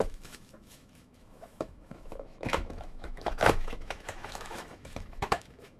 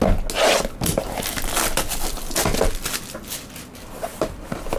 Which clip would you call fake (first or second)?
first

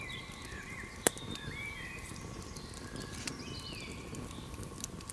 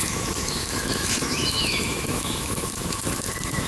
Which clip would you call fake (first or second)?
second